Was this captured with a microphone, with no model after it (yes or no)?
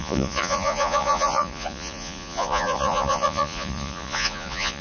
no